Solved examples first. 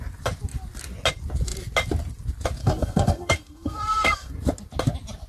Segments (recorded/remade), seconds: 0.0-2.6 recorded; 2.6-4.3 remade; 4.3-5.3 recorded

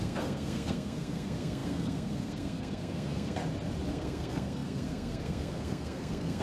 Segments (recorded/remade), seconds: 0.0-3.4 remade; 3.4-3.9 recorded; 3.9-6.4 remade